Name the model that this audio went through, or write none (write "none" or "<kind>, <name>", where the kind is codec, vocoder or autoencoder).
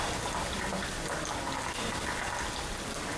none